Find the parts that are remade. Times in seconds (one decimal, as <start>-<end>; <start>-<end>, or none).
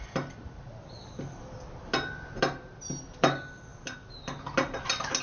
none